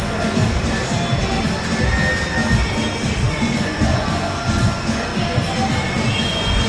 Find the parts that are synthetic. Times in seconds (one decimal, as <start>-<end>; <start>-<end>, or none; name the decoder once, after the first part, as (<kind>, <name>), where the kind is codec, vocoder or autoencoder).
0.0-0.4 (vocoder, Vocos); 3.3-5.1; 6.2-6.7